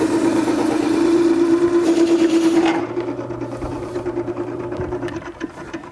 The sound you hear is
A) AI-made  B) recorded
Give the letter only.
A